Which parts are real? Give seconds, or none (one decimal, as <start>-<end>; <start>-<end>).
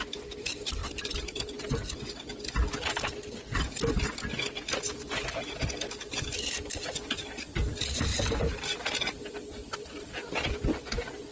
0.0-0.8; 1.5-11.3